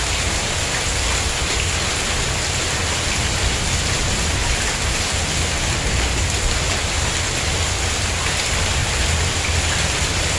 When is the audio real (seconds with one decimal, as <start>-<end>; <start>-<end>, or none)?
0.0-4.4; 5.3-8.8